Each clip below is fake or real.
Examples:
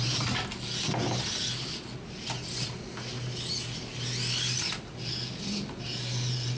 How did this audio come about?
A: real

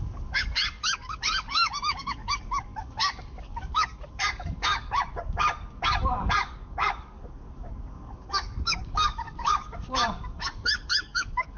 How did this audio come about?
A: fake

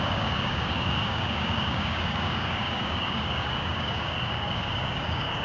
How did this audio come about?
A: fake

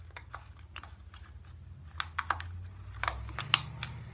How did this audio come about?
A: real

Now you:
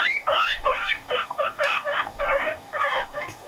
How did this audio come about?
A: fake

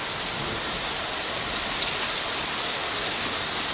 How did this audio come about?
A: real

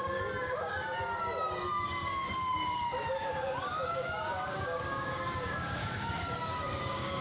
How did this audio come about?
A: fake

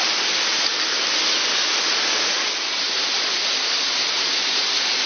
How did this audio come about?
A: real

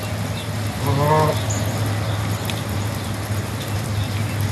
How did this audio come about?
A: real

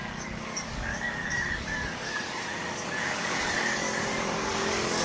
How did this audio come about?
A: fake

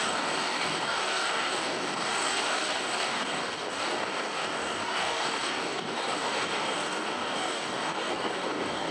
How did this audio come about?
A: fake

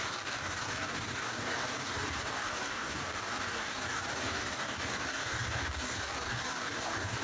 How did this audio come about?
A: fake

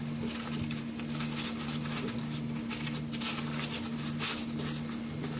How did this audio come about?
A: real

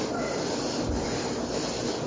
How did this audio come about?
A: real